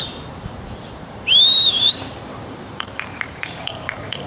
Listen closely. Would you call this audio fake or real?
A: fake